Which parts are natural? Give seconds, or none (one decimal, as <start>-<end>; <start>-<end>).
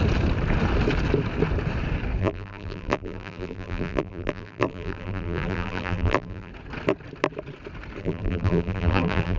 0.0-2.2; 6.5-8.0